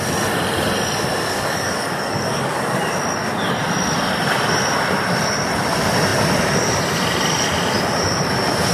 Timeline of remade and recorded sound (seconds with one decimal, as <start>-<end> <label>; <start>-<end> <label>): 0.0-1.3 recorded; 1.3-2.6 remade; 2.6-8.7 recorded